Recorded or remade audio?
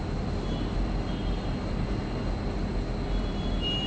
recorded